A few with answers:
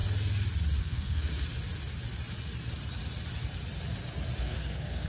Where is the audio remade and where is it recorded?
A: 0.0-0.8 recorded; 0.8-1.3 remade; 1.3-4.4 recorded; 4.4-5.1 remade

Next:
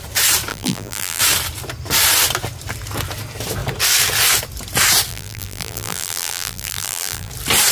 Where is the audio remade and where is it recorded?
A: 0.0-0.5 recorded; 0.5-1.2 remade; 1.2-5.1 recorded; 5.1-7.3 remade; 7.3-7.7 recorded

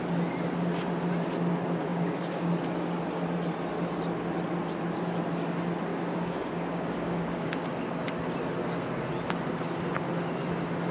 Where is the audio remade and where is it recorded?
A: 0.0-1.9 recorded; 1.9-2.5 remade; 2.5-5.9 recorded; 5.9-7.5 remade; 7.5-10.9 recorded

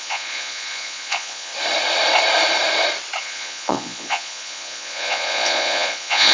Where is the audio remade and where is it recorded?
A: 0.0-1.5 remade; 1.5-3.2 recorded; 3.2-6.3 remade

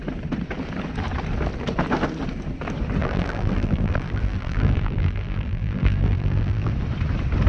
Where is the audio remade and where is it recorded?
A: 0.0-3.0 recorded; 3.0-6.7 remade; 6.7-7.5 recorded

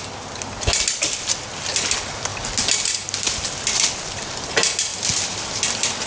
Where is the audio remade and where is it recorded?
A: 0.0-6.1 recorded

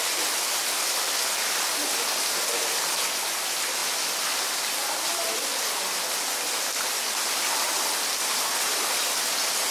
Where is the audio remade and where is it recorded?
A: 0.0-9.7 recorded